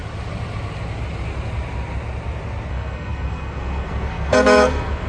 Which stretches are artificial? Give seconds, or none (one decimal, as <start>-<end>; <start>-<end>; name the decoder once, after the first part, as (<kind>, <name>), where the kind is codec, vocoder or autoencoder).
2.7-5.1 (codec, SNAC)

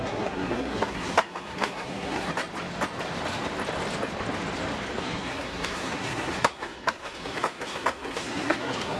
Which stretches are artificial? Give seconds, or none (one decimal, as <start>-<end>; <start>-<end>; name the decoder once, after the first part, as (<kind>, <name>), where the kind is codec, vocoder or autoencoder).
0.0-2.3 (codec, SNAC); 5.0-9.0